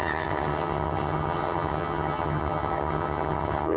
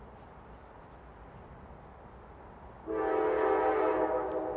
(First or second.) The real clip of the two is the second